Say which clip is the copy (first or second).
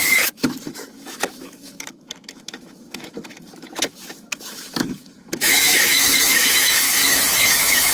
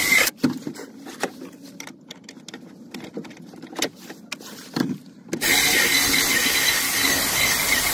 first